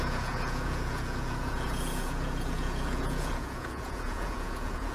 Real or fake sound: fake